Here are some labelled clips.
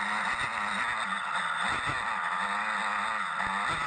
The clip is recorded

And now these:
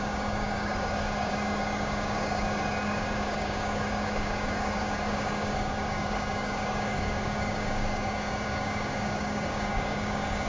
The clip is remade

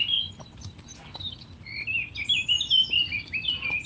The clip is recorded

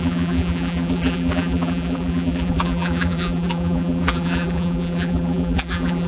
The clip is remade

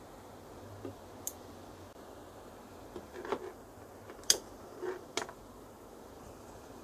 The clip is recorded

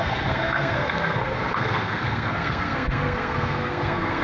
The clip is remade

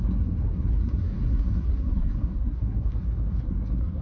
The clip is remade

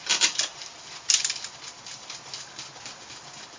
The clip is recorded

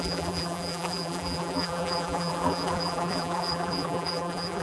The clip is remade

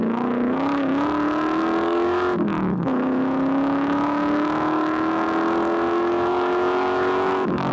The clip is remade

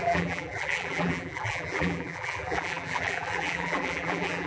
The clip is remade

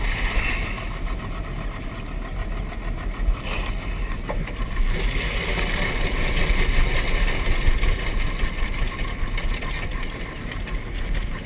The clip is recorded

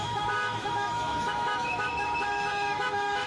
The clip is remade